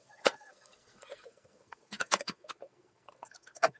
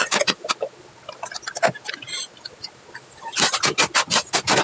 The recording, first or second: second